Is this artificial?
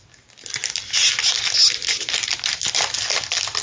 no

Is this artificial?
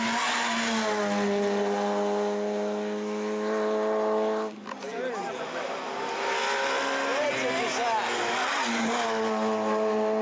no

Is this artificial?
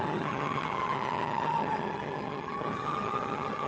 yes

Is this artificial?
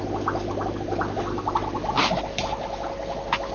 no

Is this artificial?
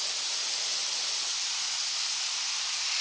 no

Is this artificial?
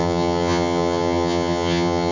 yes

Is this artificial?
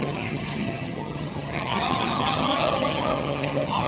yes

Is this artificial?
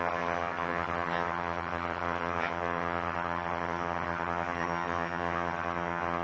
yes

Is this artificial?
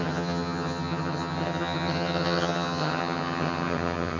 yes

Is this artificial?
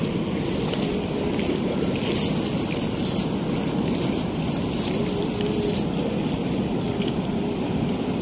no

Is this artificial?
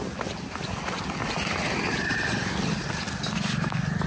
no